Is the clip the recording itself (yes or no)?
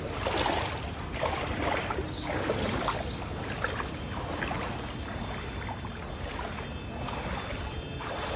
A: yes